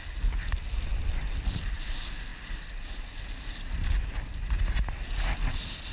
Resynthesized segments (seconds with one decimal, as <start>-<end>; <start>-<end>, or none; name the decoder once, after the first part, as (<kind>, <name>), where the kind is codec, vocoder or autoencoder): none